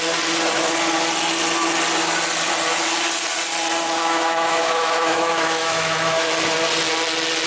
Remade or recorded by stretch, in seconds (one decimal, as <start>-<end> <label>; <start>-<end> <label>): 0.0-4.0 recorded; 4.0-6.3 remade; 6.3-7.5 recorded